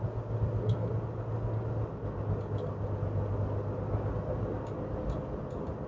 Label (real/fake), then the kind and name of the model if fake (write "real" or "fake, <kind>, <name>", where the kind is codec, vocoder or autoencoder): real